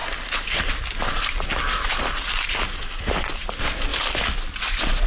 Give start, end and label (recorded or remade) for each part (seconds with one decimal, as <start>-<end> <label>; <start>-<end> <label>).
0.0-0.6 remade; 0.6-3.9 recorded; 3.9-5.1 remade